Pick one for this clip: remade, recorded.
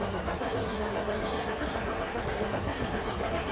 remade